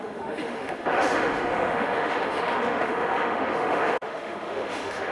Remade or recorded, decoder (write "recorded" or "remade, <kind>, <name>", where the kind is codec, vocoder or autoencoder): remade, autoencoder, DAC-VAE